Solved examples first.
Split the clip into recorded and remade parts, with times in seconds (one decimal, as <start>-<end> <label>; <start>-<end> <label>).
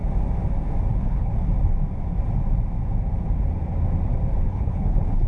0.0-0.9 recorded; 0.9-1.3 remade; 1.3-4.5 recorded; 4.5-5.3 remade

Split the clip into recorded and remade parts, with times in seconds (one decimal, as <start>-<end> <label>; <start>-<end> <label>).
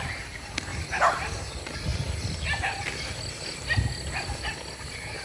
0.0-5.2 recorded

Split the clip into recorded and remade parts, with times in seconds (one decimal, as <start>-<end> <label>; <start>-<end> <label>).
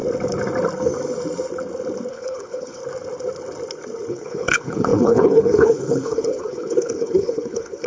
0.0-2.1 recorded; 2.1-2.8 remade; 2.8-4.1 recorded; 4.1-7.9 remade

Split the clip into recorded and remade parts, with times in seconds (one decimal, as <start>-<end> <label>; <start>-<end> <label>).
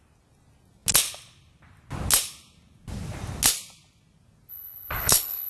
0.0-4.5 recorded; 4.5-5.5 remade